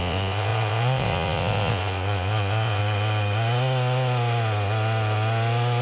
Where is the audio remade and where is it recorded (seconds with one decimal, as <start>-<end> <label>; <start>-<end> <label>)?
0.0-2.8 remade; 2.8-5.8 recorded